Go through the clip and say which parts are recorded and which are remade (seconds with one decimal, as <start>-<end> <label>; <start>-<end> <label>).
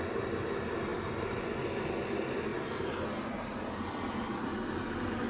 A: 0.0-0.9 recorded; 0.9-1.5 remade; 1.5-5.3 recorded